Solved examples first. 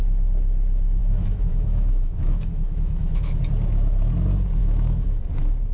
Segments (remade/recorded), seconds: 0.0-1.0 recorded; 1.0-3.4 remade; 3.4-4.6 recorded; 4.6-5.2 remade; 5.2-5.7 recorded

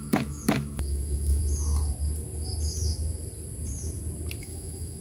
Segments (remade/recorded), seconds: 0.0-1.4 remade; 1.4-4.4 recorded; 4.4-5.0 remade

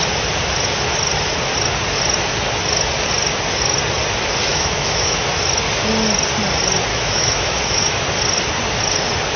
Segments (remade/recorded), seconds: 0.0-4.5 recorded; 4.5-5.3 remade; 5.3-6.9 recorded; 6.9-8.0 remade; 8.0-9.4 recorded

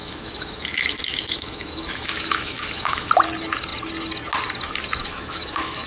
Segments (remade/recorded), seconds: 0.0-3.1 remade; 3.1-5.0 recorded; 5.0-5.9 remade

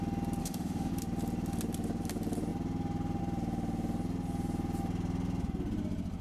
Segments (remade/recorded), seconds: 0.0-0.4 recorded; 0.4-0.9 remade; 0.9-6.2 recorded